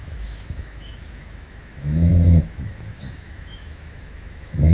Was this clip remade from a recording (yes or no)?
yes